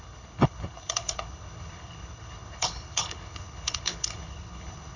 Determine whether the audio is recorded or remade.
remade